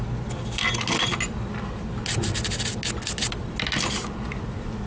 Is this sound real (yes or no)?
yes